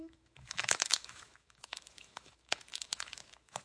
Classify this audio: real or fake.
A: fake